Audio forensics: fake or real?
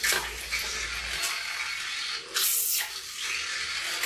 real